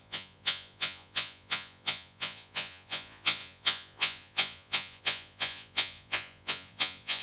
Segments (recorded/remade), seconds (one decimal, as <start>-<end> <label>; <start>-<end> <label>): 0.0-7.2 remade